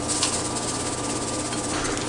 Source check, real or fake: real